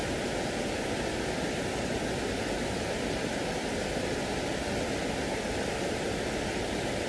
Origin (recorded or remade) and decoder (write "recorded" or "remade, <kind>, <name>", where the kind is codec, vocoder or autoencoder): recorded